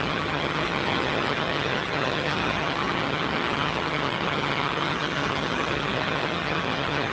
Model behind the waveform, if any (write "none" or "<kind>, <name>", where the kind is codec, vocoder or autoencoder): vocoder, HiFi-GAN